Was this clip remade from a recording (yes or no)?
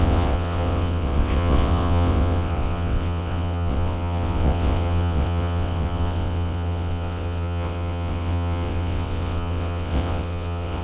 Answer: yes